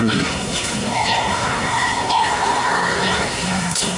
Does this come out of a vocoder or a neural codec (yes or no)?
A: yes